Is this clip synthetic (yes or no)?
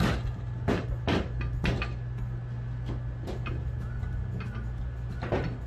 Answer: no